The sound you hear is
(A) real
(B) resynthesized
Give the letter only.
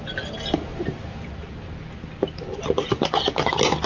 A